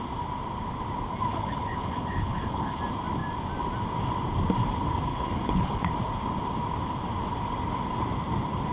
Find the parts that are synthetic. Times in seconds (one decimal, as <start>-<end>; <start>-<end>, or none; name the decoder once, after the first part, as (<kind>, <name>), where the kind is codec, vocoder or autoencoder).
1.3-2.8 (codec, HILCodec); 5.1-5.9